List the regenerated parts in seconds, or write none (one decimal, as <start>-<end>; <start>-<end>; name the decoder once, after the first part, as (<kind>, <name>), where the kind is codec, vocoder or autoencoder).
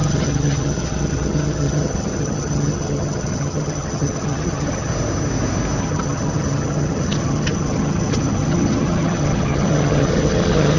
0.0-4.9 (vocoder, HiFi-GAN); 5.8-10.8